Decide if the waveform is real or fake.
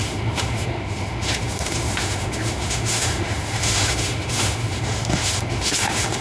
fake